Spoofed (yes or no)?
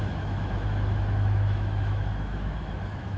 yes